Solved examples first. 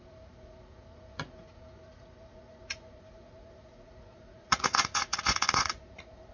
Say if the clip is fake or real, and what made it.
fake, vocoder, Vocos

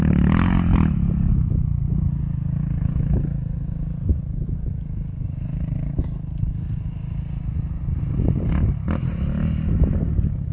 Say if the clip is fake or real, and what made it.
real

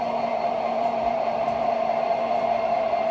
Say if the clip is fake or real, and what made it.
fake, vocoder, BigVGAN v2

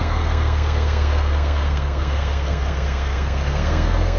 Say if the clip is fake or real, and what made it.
fake, codec, SNAC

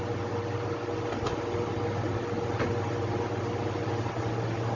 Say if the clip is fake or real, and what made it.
real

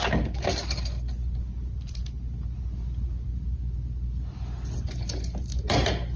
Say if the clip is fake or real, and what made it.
real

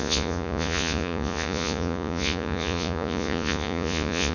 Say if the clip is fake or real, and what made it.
fake, vocoder, Vocos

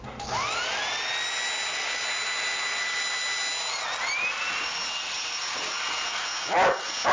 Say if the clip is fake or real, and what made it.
real